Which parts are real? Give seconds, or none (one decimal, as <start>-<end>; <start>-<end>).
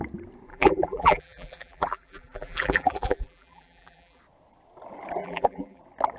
0.0-0.5; 4.2-5.2; 5.8-6.2